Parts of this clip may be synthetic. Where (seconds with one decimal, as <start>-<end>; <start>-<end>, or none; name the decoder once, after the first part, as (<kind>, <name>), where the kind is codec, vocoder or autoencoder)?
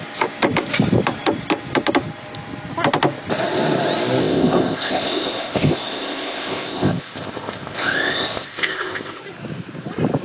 4.2-9.2 (codec, ZipCodec)